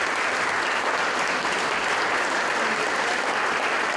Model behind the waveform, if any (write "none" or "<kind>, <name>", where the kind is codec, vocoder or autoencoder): none